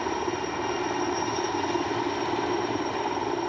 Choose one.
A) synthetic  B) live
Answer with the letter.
B